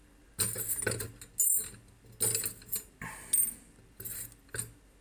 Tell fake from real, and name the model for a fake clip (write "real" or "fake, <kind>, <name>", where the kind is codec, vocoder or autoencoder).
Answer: real